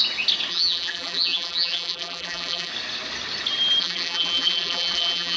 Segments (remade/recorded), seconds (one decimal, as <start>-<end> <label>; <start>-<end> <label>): 0.0-0.5 recorded; 0.5-2.7 remade; 2.7-3.8 recorded; 3.8-5.4 remade